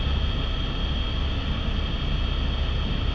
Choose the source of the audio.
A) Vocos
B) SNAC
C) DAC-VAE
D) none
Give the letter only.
D